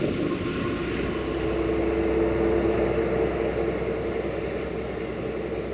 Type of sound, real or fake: real